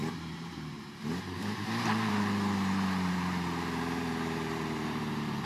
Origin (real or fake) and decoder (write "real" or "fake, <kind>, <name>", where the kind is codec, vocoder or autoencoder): fake, vocoder, BigVGAN v2